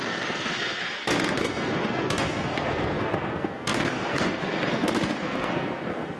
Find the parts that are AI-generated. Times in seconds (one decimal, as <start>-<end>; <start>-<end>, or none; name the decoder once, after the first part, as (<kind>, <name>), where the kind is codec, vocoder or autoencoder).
0.0-6.2 (codec, SNAC)